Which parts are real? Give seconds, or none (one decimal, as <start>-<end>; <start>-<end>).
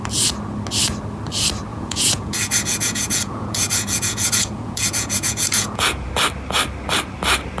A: 0.0-1.7; 6.1-7.6